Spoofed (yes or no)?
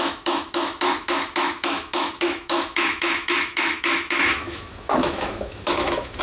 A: yes